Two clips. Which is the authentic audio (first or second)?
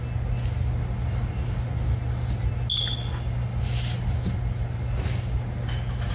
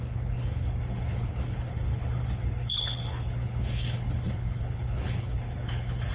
first